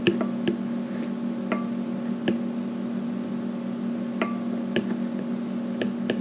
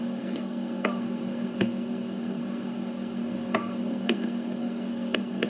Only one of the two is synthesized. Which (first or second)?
second